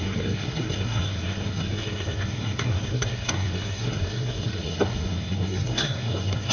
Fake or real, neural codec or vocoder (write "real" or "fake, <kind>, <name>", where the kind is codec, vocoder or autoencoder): fake, codec, SNAC